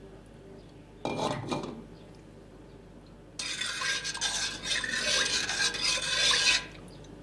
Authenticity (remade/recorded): recorded